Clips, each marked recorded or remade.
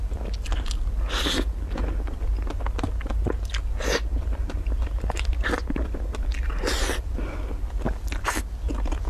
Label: recorded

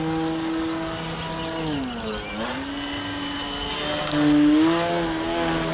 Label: recorded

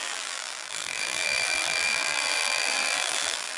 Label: remade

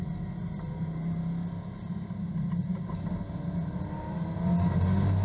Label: recorded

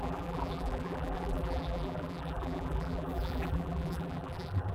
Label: remade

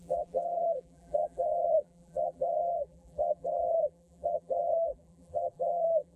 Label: remade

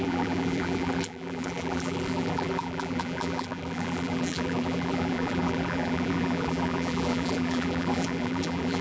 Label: remade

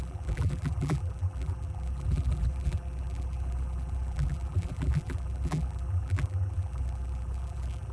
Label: remade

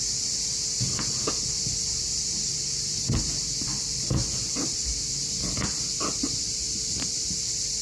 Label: remade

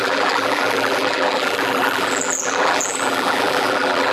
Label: remade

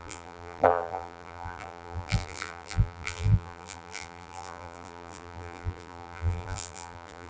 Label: remade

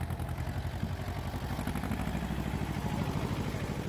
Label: recorded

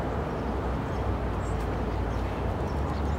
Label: recorded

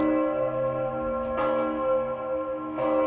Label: recorded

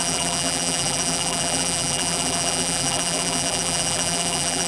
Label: remade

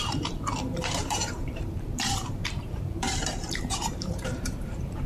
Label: remade